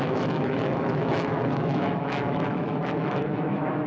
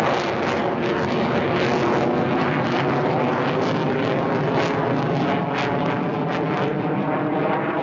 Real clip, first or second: second